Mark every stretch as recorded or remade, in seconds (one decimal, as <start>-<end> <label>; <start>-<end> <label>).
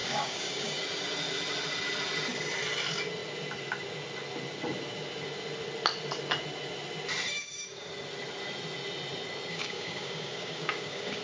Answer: 0.0-0.8 remade; 0.8-7.3 recorded; 7.3-7.9 remade; 7.9-9.5 recorded; 9.5-11.2 remade